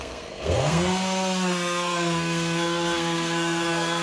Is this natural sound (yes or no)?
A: no